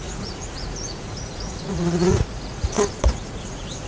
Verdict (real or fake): fake